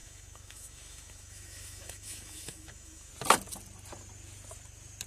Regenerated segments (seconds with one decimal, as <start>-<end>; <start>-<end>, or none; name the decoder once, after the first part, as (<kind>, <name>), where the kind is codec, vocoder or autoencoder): 0.0-3.1 (autoencoder, DAC-VAE)

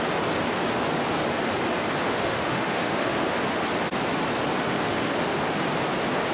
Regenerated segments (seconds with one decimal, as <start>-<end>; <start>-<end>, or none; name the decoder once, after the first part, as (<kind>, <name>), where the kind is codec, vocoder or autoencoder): 2.1-3.4 (autoencoder, DAC-VAE); 4.6-5.4